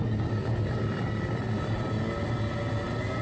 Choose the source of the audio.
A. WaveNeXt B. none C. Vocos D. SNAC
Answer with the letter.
B